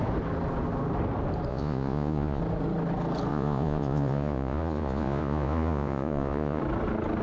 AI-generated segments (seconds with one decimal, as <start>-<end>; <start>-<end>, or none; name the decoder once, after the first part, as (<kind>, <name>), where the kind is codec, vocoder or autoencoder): 1.5-2.4 (vocoder, Vocos); 3.3-6.6